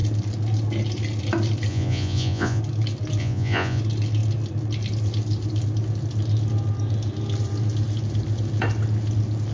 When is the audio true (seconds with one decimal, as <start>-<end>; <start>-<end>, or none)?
0.0-1.7; 2.6-3.2; 3.8-9.5